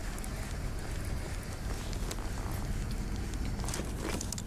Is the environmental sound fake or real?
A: real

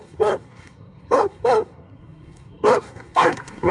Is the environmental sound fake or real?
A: fake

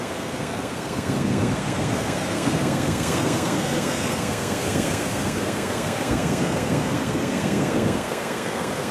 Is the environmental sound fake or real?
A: fake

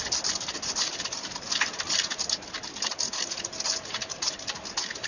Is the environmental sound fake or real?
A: real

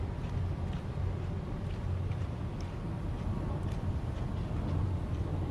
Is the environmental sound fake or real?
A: real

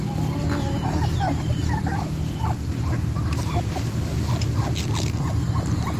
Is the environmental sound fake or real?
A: real